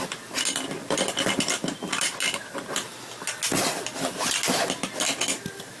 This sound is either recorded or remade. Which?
recorded